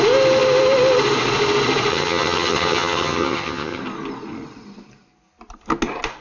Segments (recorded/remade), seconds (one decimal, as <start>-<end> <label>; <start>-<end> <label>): 0.0-1.9 recorded; 1.9-3.8 remade; 3.8-6.2 recorded